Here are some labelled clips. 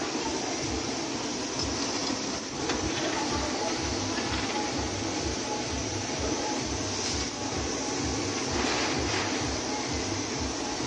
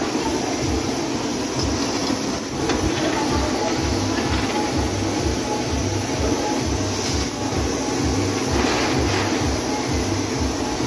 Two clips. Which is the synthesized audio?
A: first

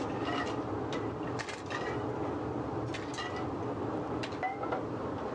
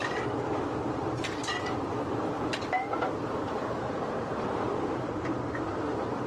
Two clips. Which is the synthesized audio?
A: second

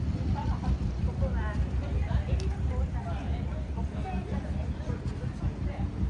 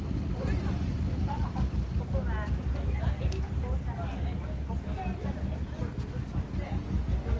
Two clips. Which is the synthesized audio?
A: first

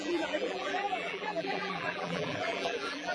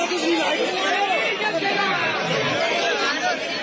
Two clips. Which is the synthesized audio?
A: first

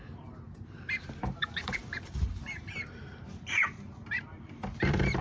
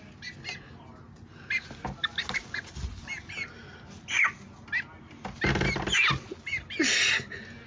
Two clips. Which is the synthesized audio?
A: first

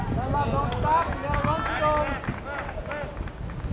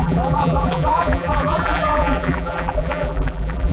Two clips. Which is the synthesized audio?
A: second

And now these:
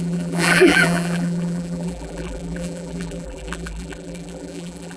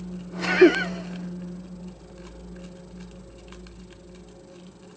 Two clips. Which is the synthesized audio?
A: first